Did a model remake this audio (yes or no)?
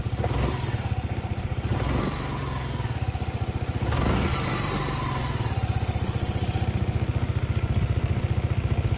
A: no